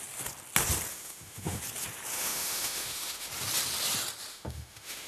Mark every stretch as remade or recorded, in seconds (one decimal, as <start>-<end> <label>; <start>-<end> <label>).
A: 0.0-0.9 recorded; 0.9-1.6 remade; 1.6-2.1 recorded; 2.1-3.3 remade; 3.3-4.3 recorded; 4.3-5.1 remade